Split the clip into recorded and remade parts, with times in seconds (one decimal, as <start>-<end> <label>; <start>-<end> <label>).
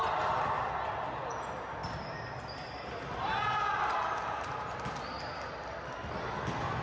0.0-6.8 recorded